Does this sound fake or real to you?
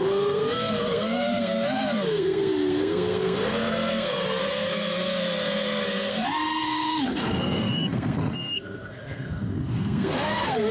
fake